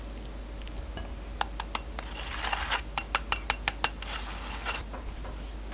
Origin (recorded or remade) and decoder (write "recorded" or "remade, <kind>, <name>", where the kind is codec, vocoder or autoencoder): recorded